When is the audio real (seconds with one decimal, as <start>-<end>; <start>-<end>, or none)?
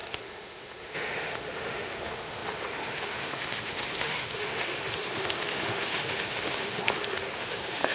none